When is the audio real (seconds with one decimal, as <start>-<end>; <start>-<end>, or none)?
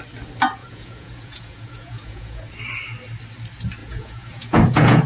0.0-0.6; 2.5-3.8